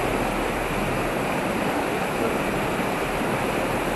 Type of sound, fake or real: real